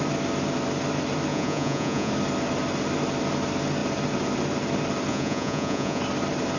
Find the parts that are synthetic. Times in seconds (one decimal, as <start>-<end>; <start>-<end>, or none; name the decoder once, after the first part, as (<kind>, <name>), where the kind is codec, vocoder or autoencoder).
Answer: 1.3-2.1 (vocoder, Vocos); 5.1-6.0